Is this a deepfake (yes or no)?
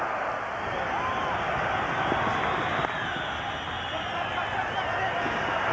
no